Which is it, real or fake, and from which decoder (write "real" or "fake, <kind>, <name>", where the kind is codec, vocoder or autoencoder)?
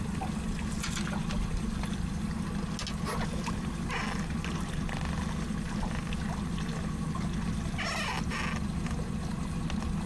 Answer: real